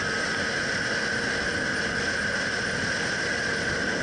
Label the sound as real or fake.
real